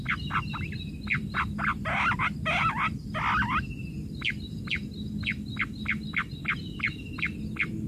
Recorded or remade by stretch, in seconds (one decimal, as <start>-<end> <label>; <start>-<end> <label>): 0.0-7.9 recorded